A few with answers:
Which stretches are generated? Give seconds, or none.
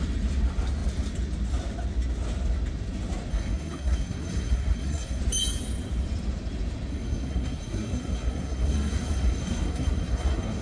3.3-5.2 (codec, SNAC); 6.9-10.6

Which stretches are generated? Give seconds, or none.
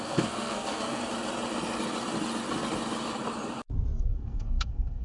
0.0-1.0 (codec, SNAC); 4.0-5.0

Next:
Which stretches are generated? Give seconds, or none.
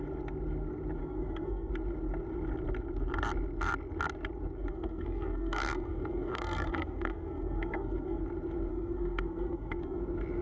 1.0-1.7 (codec, SNAC); 4.7-8.2; 8.7-10.0